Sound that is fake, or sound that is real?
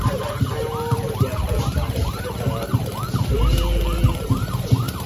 fake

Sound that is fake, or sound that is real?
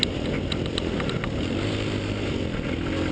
real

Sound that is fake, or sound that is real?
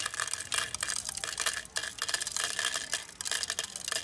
real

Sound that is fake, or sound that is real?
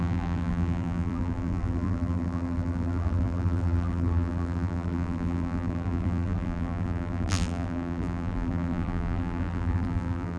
fake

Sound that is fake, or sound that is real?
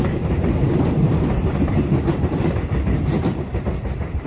fake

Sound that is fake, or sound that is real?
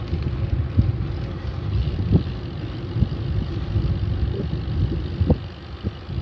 real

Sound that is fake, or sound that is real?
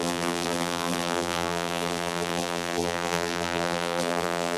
fake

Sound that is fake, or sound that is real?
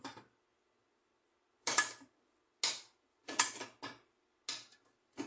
real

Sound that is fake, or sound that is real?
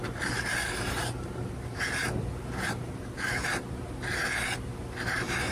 fake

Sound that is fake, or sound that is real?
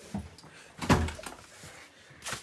real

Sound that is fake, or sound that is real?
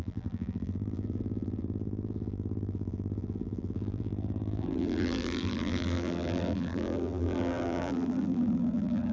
fake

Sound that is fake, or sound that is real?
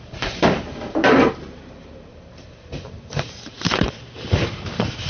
fake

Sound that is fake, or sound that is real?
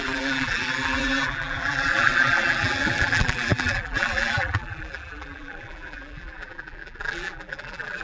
fake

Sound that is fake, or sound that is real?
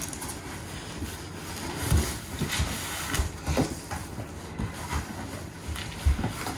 real